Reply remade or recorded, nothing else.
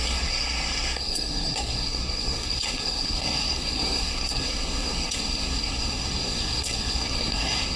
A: remade